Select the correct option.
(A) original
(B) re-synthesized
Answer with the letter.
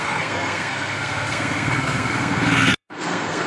B